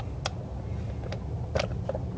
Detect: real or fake real